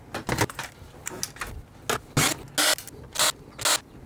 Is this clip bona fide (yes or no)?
yes